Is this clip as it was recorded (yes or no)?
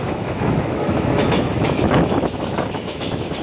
no